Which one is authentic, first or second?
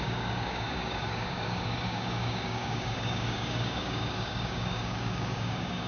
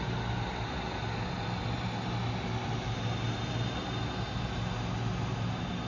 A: second